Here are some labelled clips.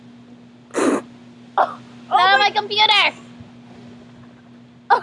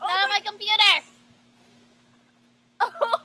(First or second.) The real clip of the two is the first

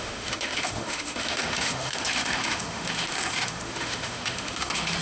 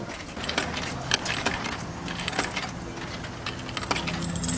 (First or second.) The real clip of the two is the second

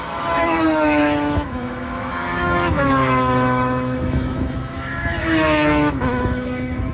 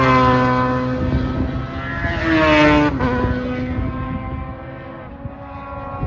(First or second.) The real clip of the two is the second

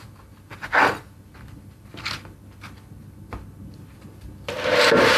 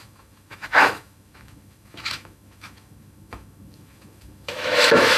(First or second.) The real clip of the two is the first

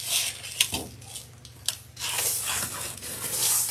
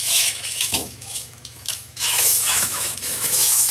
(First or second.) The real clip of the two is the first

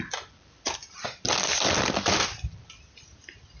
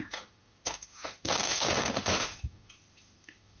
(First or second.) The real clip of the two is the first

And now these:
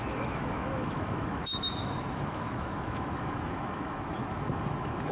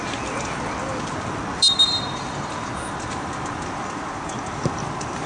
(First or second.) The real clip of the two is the second